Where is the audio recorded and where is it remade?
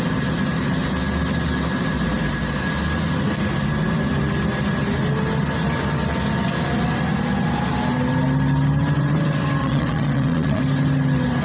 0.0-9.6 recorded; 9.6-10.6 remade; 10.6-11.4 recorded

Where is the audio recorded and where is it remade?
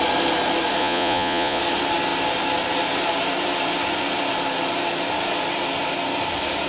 0.0-0.8 recorded; 0.8-1.6 remade; 1.6-6.7 recorded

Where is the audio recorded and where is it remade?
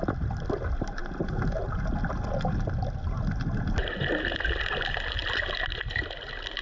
0.0-6.6 recorded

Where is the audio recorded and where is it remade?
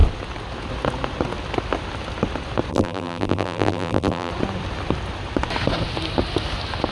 0.0-2.7 recorded; 2.7-4.3 remade; 4.3-6.9 recorded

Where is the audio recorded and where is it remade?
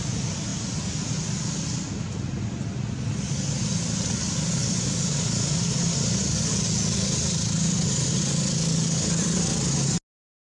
0.0-10.4 recorded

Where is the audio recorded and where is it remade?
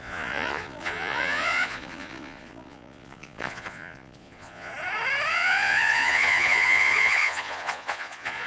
0.0-4.7 remade; 4.7-5.3 recorded; 5.3-8.5 remade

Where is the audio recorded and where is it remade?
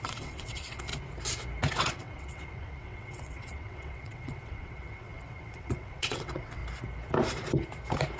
0.0-0.9 remade; 0.9-1.8 recorded; 1.8-6.6 remade; 6.6-8.2 recorded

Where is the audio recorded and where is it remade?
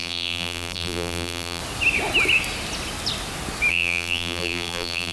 0.0-1.6 remade; 1.6-3.7 recorded; 3.7-5.1 remade